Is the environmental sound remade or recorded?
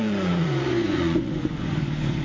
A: remade